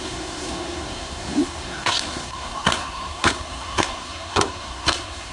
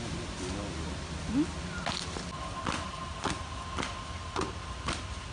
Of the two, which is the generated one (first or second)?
first